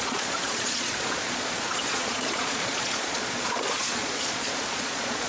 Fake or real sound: fake